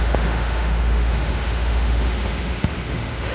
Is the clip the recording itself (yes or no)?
no